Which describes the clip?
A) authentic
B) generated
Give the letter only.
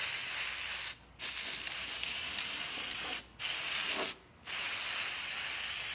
A